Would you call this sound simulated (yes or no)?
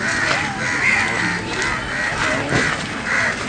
no